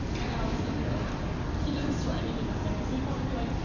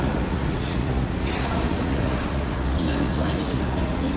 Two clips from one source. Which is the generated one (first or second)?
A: second